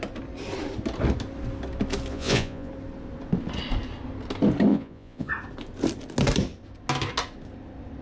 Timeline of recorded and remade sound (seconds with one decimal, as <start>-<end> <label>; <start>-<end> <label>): 0.0-2.1 recorded; 2.1-2.7 remade; 2.7-4.7 recorded; 4.7-5.3 remade; 5.3-8.0 recorded

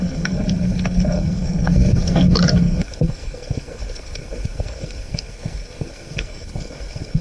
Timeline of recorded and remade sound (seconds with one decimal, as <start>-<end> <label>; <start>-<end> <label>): 0.0-7.2 remade

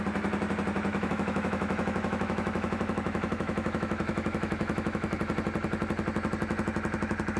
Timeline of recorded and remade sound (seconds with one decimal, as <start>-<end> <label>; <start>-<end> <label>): 0.0-0.9 recorded; 0.9-5.2 remade; 5.2-7.4 recorded

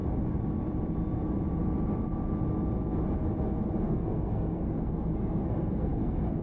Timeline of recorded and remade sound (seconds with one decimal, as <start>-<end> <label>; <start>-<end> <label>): 0.0-3.8 recorded; 3.8-6.4 remade